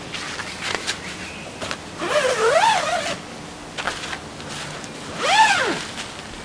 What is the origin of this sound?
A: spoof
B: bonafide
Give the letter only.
B